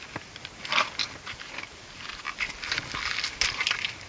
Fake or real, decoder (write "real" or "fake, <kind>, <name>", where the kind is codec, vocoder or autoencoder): real